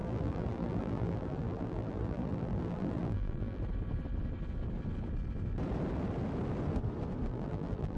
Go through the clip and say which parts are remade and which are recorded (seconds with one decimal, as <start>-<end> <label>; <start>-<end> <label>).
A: 0.0-3.6 remade; 3.6-7.3 recorded; 7.3-8.0 remade